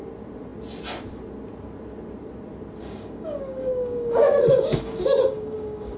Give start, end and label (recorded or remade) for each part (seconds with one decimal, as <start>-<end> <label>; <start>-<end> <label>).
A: 0.0-2.8 recorded; 2.8-6.0 remade